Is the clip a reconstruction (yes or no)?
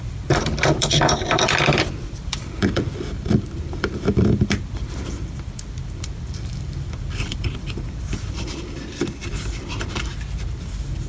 yes